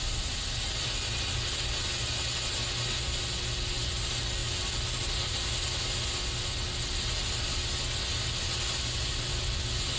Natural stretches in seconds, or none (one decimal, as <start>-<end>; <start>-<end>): 0.0-10.0

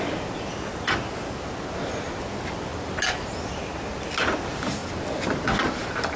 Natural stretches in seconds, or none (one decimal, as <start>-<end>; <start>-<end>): 0.0-6.2